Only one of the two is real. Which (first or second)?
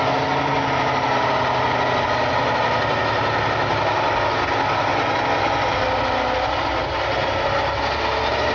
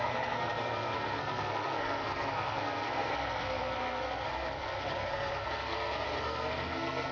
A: first